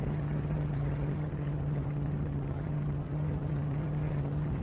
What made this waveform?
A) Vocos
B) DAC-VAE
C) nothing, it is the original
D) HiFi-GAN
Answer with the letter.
D